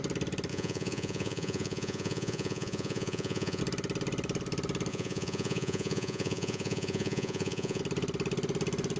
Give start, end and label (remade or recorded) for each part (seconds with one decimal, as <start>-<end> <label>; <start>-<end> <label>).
0.0-0.5 recorded; 0.5-3.6 remade; 3.6-4.9 recorded; 4.9-7.8 remade; 7.8-9.0 recorded